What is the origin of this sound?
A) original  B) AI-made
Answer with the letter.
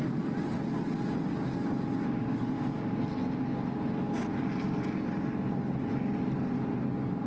A